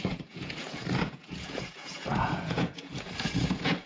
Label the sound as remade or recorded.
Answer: remade